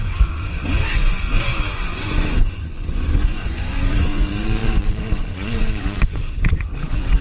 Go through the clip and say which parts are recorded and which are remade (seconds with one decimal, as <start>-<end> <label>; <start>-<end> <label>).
0.0-7.2 remade

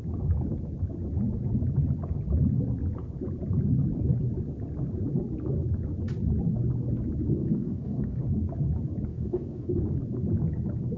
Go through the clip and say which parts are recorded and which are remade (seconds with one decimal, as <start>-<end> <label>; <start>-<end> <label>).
0.0-7.3 recorded; 7.3-8.2 remade; 8.2-9.1 recorded; 9.1-9.8 remade; 9.8-11.0 recorded